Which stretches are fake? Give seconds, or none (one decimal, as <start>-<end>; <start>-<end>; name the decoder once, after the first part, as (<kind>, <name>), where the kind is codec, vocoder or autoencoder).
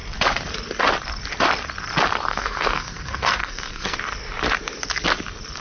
2.3-4.0 (codec, SNAC)